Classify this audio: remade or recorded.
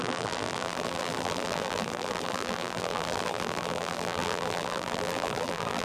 remade